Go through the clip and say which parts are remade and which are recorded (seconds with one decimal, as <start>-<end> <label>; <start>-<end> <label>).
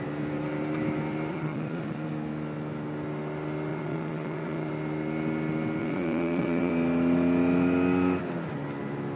0.0-1.3 recorded; 1.3-2.1 remade; 2.1-3.7 recorded; 3.7-4.7 remade; 4.7-5.8 recorded; 5.8-6.7 remade; 6.7-9.2 recorded